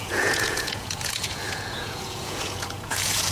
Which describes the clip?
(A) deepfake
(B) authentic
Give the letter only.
A